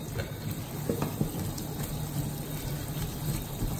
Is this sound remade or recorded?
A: recorded